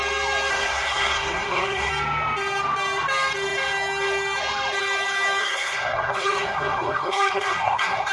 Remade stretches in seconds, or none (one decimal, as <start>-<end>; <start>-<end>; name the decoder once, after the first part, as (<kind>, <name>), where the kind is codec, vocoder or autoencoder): 0.5-1.9 (codec, SNAC); 5.4-8.1